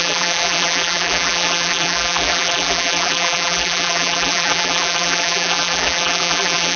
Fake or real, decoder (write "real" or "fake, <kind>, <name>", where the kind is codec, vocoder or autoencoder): fake, vocoder, BigVGAN v2